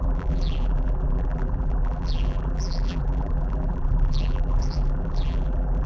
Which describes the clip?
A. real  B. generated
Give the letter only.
B